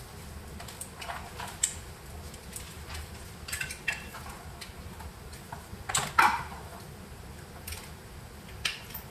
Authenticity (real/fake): real